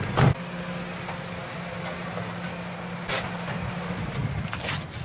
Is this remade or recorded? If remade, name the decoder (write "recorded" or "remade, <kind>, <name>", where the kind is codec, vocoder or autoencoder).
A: recorded